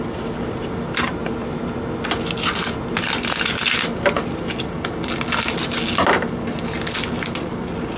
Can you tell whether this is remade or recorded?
recorded